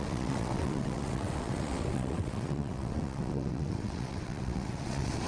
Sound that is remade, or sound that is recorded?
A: remade